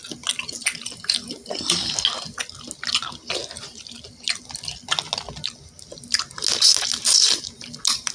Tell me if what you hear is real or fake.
real